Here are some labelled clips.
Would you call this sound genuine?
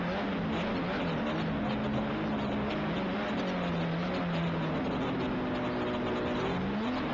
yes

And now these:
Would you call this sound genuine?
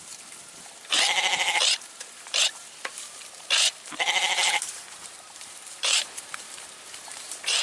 no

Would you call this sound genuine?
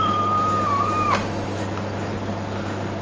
yes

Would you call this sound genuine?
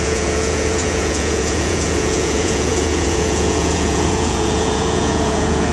no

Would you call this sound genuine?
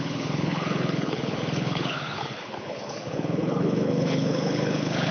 no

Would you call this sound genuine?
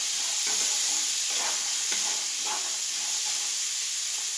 yes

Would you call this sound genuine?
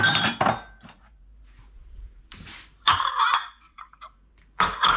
no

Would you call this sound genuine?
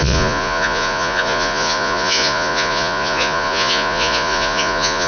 no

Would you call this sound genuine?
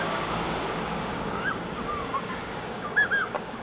no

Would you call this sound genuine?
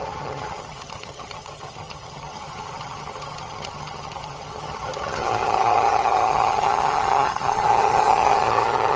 no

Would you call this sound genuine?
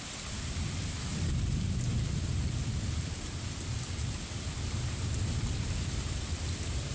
yes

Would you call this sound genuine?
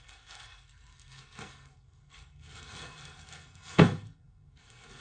no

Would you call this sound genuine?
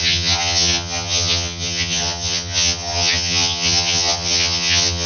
no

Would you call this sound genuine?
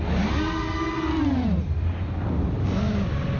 yes